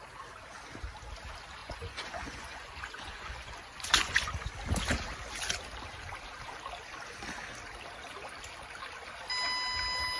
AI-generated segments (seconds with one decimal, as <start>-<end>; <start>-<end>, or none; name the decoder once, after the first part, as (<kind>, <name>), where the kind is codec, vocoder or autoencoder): 1.6-4.5 (vocoder, Vocos)